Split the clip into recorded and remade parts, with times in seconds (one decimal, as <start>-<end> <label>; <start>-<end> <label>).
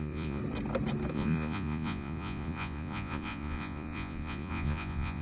0.0-0.4 remade; 0.4-1.1 recorded; 1.1-5.2 remade